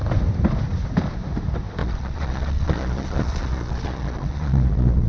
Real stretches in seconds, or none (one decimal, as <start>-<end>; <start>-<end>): 0.0-1.8